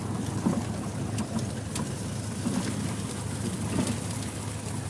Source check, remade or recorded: recorded